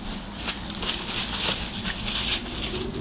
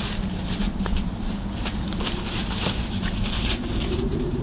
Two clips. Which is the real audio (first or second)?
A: first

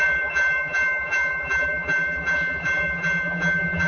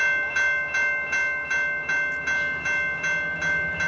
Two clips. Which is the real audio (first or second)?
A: second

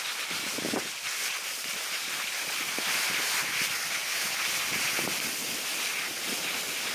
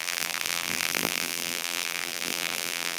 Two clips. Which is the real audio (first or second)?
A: first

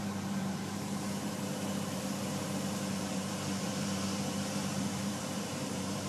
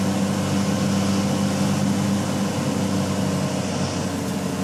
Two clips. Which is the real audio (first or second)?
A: second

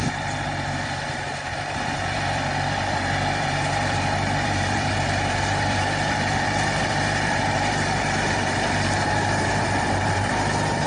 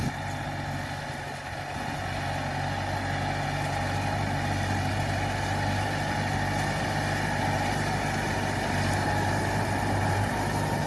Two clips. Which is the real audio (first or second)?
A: second